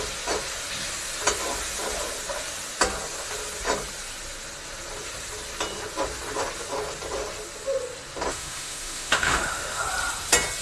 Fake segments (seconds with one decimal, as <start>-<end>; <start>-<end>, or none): 8.3-9.8